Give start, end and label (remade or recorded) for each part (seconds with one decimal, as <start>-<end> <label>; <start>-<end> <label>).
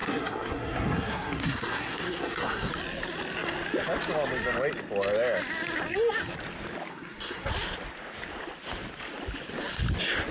0.0-2.7 remade; 2.7-6.9 recorded; 6.9-7.5 remade; 7.5-10.3 recorded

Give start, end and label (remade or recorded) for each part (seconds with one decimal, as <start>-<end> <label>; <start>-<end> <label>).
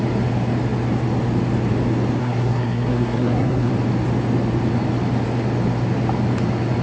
0.0-2.2 recorded; 2.2-3.7 remade; 3.7-6.8 recorded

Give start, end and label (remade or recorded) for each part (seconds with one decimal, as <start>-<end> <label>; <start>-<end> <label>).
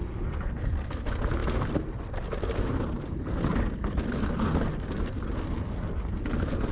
0.0-6.7 recorded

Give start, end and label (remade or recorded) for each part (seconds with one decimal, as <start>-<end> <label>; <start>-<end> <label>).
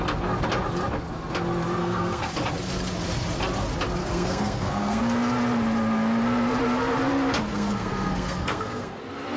0.0-1.8 recorded; 1.8-2.3 remade; 2.3-4.0 recorded; 4.0-5.0 remade; 5.0-7.5 recorded; 7.5-9.0 remade; 9.0-9.4 recorded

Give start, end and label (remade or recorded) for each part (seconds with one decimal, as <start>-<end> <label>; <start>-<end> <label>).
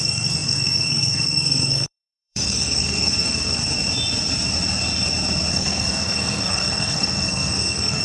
0.0-3.6 remade; 3.6-5.5 recorded; 5.5-8.0 remade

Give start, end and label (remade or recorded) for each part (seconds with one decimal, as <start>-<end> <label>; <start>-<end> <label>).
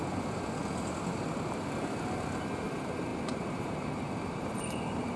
0.0-3.1 recorded; 3.1-5.2 remade